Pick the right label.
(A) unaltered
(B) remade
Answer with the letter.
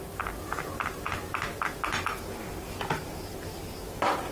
A